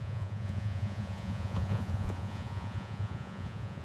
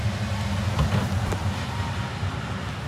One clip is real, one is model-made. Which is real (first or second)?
second